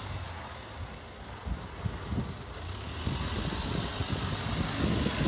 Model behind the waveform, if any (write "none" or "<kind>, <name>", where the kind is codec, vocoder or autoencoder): none